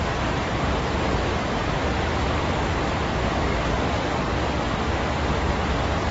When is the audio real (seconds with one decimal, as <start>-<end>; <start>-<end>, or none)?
0.0-3.5; 4.4-6.1